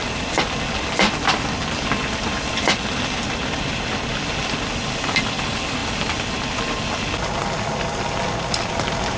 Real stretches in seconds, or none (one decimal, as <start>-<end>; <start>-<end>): 0.0-9.2